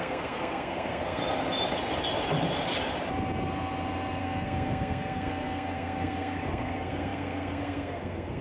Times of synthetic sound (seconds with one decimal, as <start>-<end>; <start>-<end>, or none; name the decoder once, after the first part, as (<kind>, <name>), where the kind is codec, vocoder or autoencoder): 0.0-1.2 (codec, SNAC); 4.2-8.4